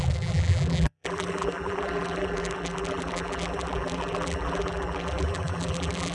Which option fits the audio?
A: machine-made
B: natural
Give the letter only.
A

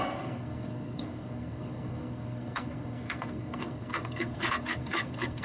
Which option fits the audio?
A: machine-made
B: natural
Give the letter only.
A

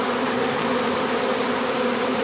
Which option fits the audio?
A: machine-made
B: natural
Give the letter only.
B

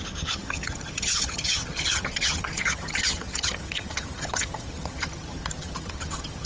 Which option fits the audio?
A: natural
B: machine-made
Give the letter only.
B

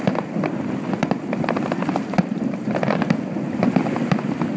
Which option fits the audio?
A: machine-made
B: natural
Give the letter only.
A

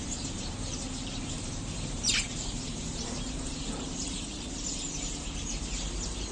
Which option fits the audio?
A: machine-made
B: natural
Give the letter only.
A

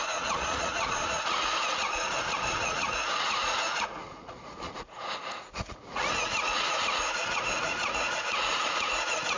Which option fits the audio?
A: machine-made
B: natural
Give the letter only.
A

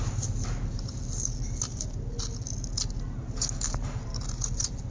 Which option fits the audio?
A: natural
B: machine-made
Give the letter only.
A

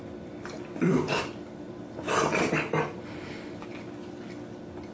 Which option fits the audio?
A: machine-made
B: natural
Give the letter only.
B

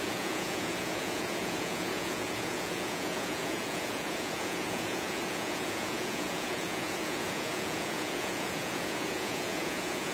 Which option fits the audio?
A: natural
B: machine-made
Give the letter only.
B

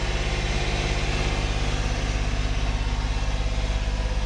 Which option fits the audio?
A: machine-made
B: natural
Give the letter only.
B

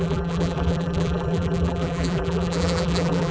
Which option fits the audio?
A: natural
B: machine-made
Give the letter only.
B